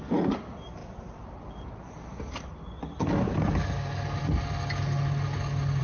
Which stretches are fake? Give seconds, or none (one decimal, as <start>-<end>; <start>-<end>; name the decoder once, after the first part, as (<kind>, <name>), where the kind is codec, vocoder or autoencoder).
0.8-1.4 (vocoder, BigVGAN v2)